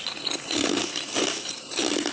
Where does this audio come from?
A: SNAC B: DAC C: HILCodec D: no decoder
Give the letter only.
D